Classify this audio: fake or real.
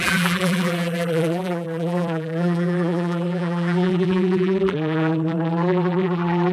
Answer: fake